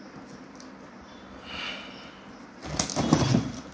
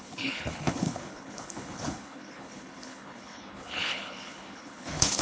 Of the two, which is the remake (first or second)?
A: second